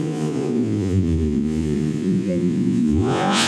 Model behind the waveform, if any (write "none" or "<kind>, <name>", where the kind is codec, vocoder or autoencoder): vocoder, Vocos